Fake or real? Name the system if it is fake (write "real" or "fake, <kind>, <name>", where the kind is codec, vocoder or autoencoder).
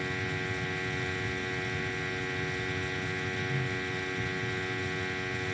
real